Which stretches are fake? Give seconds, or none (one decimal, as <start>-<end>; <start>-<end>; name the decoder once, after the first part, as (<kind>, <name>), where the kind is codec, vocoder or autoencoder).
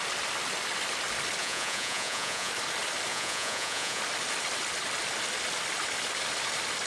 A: 1.4-2.5 (vocoder, Vocos); 3.1-4.0